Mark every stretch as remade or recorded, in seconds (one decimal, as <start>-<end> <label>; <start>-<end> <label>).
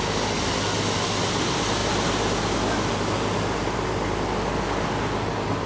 0.0-5.7 recorded